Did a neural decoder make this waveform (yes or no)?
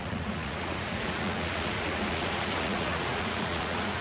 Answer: yes